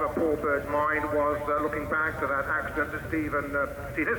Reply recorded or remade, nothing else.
recorded